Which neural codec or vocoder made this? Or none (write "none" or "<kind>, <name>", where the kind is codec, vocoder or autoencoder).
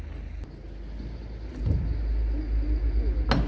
none